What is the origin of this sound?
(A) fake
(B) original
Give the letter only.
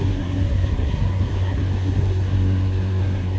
A